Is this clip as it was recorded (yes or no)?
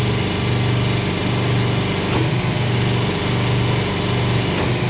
yes